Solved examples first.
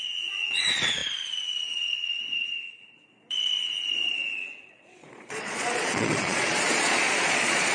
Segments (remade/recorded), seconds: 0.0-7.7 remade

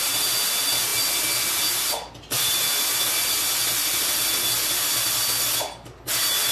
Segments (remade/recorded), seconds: 0.0-6.5 recorded

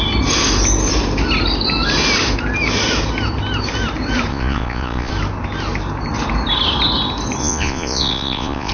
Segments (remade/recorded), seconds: 0.0-4.3 recorded; 4.3-5.1 remade; 5.1-7.4 recorded; 7.4-8.7 remade